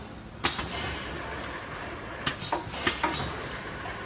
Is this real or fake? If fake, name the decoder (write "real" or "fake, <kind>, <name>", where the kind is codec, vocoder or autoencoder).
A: real